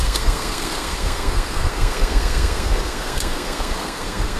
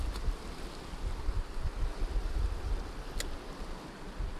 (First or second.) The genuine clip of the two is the second